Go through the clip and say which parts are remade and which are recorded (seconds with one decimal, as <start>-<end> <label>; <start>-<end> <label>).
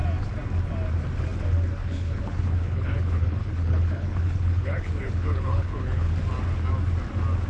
0.0-1.8 recorded; 1.8-6.1 remade; 6.1-7.5 recorded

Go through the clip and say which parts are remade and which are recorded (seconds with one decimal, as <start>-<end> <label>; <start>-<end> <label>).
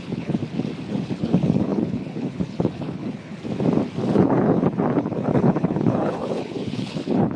0.0-0.4 remade; 0.4-0.9 recorded; 0.9-3.3 remade; 3.3-4.1 recorded; 4.1-7.4 remade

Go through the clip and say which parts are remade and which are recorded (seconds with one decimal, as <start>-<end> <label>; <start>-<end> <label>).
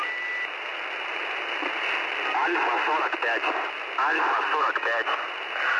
0.0-5.8 recorded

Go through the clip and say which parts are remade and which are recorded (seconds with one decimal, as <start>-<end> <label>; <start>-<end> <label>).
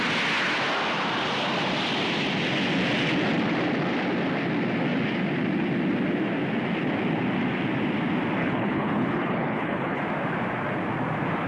0.0-8.4 recorded; 8.4-10.0 remade; 10.0-11.5 recorded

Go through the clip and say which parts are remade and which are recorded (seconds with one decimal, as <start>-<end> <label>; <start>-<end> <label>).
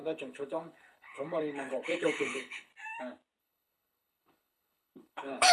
0.0-2.7 remade; 2.7-3.4 recorded; 3.4-5.5 remade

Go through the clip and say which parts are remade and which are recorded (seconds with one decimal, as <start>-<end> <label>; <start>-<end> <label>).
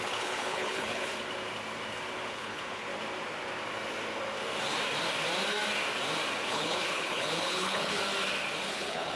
0.0-1.1 remade; 1.1-2.3 recorded; 2.3-2.9 remade; 2.9-6.5 recorded; 6.5-8.0 remade; 8.0-8.6 recorded; 8.6-9.2 remade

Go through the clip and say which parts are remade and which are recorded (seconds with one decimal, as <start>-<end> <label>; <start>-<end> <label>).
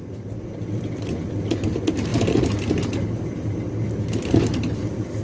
0.0-5.2 recorded